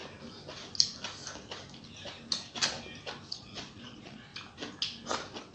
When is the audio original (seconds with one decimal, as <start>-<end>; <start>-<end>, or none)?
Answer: 0.0-3.3; 4.3-5.5

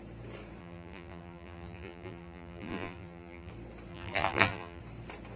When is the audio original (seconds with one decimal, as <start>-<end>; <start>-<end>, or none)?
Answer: 0.0-0.6; 3.5-3.9; 4.8-5.4

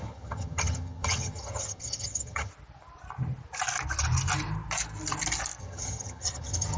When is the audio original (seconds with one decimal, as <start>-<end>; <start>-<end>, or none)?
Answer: 2.5-5.6